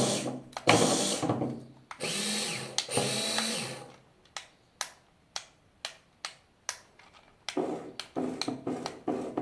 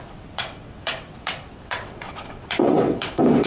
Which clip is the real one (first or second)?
first